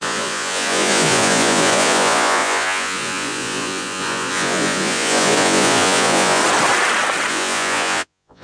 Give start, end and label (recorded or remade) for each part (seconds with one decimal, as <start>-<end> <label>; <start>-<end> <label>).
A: 0.0-6.4 remade; 6.4-7.3 recorded; 7.3-8.4 remade